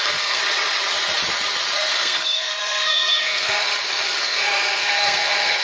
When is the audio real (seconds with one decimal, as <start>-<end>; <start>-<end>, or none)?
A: 0.4-1.9; 3.7-4.2